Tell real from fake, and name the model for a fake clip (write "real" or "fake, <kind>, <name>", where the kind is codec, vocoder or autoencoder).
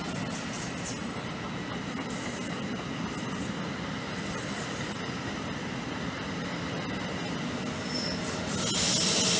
real